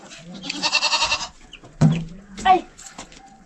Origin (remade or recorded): remade